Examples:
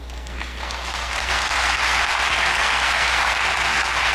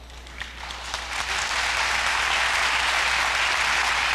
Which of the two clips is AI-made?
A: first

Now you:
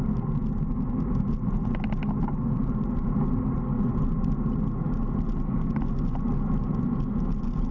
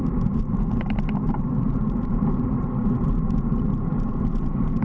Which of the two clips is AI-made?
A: second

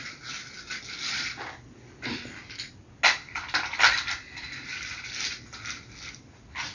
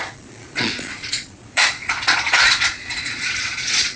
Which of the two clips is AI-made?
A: second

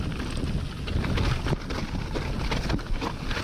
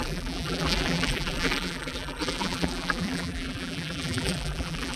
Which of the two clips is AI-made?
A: second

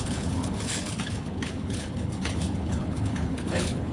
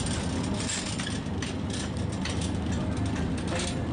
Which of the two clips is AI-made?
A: first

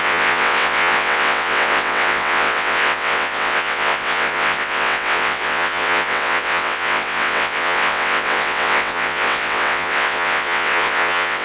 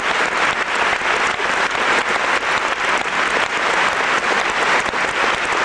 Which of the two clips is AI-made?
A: first